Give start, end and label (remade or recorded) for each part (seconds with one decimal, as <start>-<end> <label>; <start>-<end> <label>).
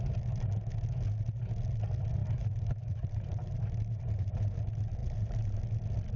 0.0-2.2 recorded; 2.2-4.6 remade; 4.6-5.0 recorded; 5.0-5.6 remade; 5.6-6.2 recorded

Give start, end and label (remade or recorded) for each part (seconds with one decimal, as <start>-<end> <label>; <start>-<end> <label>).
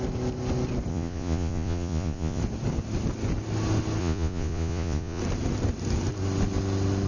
0.0-0.9 recorded; 0.9-2.4 remade; 2.4-4.0 recorded; 4.0-5.2 remade; 5.2-7.1 recorded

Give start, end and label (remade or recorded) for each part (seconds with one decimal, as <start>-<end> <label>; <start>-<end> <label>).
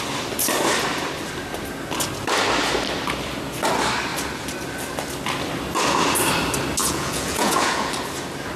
0.0-6.8 recorded; 6.8-7.9 remade; 7.9-8.6 recorded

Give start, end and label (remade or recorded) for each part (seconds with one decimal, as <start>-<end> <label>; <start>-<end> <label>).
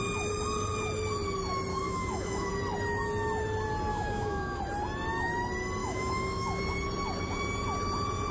0.0-1.7 recorded; 1.7-2.5 remade; 2.5-3.9 recorded; 3.9-4.6 remade; 4.6-5.8 recorded; 5.8-6.6 remade; 6.6-8.3 recorded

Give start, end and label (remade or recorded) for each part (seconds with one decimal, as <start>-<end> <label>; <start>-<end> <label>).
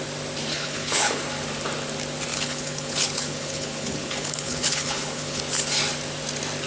0.0-0.5 recorded; 0.5-1.2 remade; 1.2-2.3 recorded; 2.3-5.4 remade; 5.4-6.7 recorded